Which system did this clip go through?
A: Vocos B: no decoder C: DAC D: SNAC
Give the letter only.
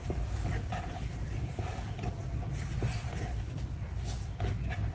B